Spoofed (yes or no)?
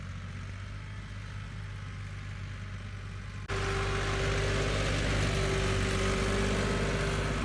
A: no